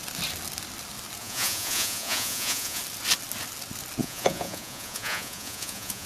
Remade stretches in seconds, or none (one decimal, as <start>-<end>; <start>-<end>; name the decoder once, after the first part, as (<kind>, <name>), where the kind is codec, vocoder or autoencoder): 1.2-2.8 (vocoder, Vocos); 4.0-6.1

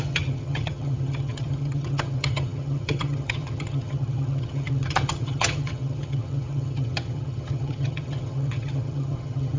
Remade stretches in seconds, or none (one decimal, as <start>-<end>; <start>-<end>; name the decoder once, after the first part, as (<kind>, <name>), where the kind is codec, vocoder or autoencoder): 0.0-9.6 (vocoder, HiFi-GAN)

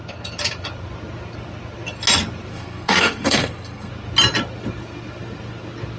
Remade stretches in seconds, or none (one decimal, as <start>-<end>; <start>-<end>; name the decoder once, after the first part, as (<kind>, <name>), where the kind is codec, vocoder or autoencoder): 2.5-3.9 (codec, SNAC)

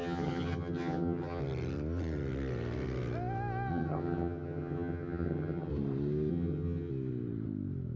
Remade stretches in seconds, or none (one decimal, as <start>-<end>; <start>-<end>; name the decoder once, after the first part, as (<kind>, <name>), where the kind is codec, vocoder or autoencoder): 0.0-1.4 (vocoder, HiFi-GAN); 3.7-5.7; 6.3-6.9

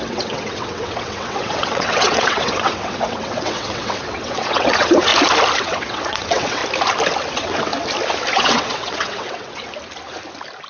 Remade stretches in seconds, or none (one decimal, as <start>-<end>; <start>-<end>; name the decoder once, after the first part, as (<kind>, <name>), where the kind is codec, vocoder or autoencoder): 0.0-5.1 (vocoder, WaveNeXt); 5.6-6.6; 7.3-7.7; 8.3-9.6

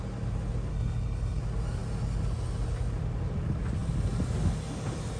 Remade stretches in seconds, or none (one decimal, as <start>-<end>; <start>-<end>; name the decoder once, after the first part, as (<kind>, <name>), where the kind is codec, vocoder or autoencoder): 0.7-1.4 (codec, HILCodec)

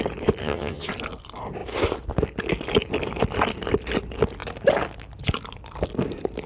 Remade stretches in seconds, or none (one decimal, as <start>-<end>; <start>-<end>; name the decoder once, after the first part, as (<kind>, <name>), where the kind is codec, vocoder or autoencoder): 0.4-0.9 (vocoder, HiFi-GAN)

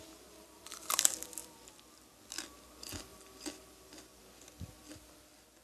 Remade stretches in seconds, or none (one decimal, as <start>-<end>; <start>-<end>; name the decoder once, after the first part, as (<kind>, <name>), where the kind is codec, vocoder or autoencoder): 0.0-1.4 (vocoder, BigVGAN v2); 2.5-4.2; 4.8-5.6